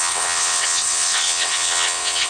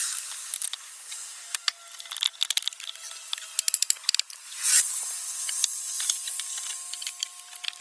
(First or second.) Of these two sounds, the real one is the second